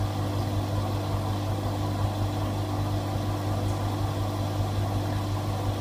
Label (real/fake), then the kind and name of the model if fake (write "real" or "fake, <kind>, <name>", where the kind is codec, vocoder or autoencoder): real